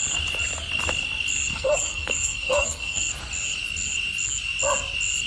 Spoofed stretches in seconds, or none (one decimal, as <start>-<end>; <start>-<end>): 1.5-3.1